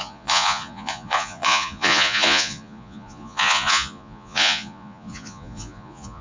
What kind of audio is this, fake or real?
fake